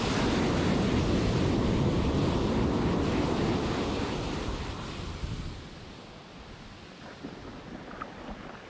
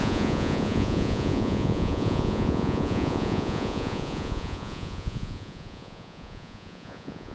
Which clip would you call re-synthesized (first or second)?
second